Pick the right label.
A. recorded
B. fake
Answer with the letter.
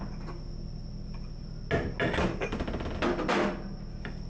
A